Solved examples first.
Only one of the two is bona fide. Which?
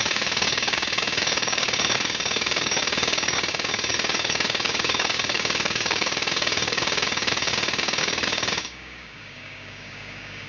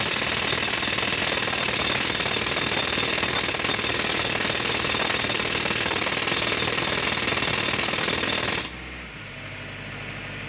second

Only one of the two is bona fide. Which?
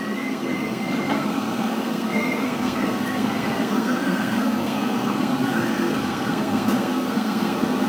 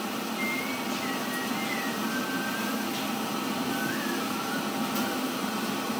second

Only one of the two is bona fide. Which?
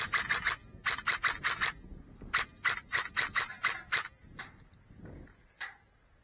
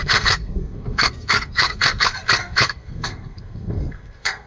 first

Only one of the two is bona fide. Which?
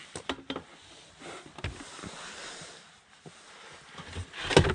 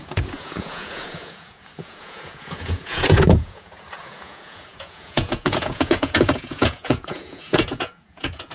first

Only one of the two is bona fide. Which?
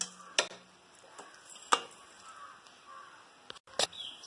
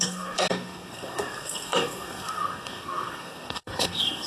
first